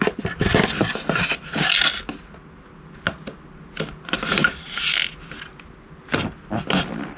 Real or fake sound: real